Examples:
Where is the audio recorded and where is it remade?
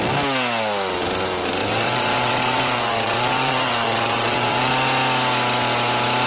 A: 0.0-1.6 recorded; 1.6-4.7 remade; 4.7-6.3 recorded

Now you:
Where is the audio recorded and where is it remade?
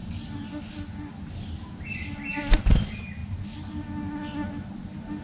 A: 0.0-5.2 recorded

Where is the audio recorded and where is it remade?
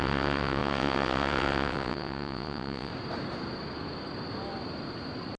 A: 0.0-2.9 remade; 2.9-5.4 recorded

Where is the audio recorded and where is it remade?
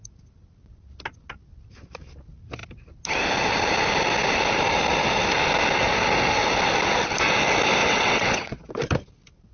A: 0.0-7.8 recorded; 7.8-8.7 remade; 8.7-9.5 recorded